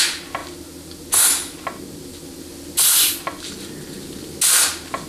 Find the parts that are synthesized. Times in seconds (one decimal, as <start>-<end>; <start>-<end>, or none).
none